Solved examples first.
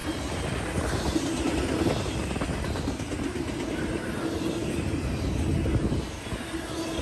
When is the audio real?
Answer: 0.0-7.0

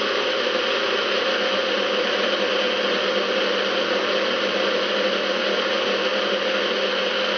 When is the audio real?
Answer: 0.0-7.4

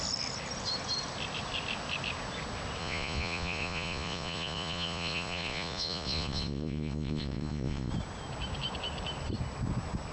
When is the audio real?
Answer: 0.0-2.8; 7.9-10.1

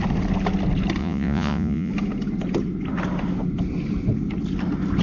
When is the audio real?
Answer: 0.0-1.0; 1.9-5.0